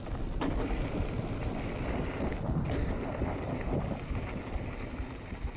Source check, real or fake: real